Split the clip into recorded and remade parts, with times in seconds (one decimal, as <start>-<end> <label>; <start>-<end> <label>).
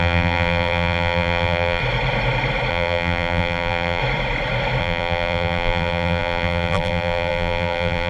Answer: 0.0-1.8 remade; 1.8-2.7 recorded; 2.7-4.0 remade; 4.0-4.8 recorded; 4.8-8.1 remade